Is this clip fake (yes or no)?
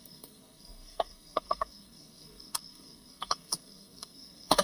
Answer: yes